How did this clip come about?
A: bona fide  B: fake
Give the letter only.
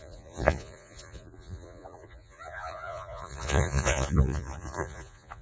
B